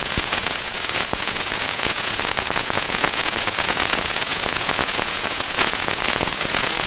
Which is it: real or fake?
fake